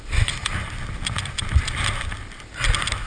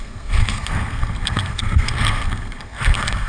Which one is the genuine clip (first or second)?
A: first